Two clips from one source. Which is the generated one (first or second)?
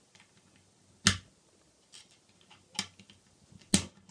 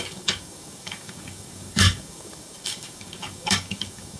second